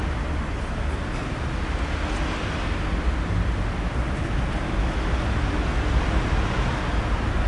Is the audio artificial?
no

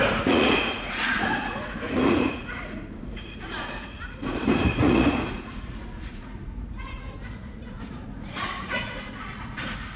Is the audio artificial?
yes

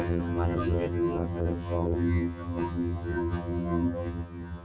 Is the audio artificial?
yes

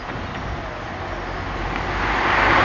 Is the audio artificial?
no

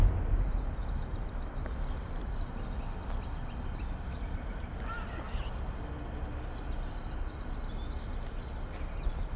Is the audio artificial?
no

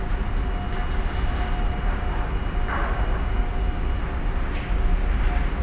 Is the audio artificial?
no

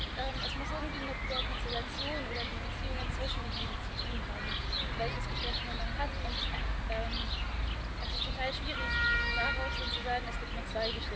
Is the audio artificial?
no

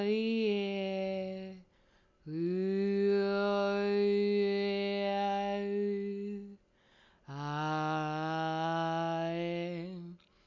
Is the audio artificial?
no